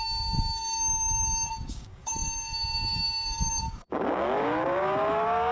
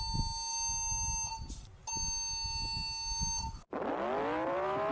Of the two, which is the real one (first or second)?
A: second